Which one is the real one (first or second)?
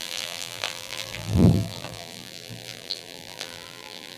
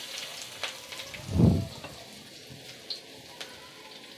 second